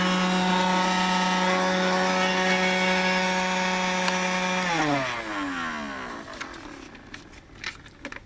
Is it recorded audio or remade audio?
recorded